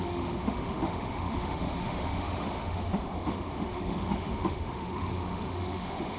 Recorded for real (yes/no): no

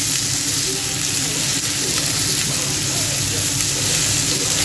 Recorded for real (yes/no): yes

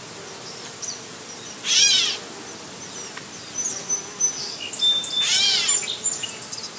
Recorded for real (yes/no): yes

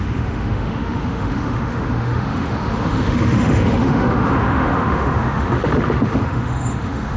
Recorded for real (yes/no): no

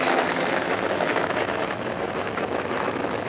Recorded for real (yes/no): no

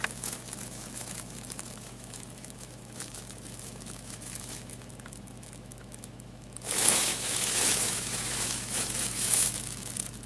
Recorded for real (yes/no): no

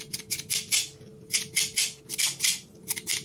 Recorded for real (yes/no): yes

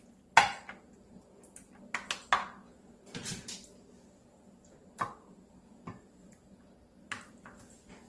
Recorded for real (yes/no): yes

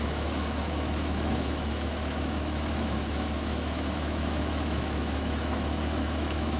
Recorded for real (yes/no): no